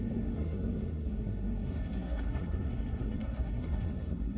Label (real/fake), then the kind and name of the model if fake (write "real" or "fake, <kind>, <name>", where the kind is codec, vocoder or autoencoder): fake, codec, SNAC